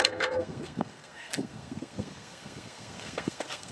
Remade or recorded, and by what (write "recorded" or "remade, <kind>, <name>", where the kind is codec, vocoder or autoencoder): remade, codec, SNAC